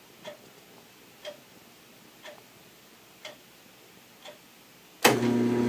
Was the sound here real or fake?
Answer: real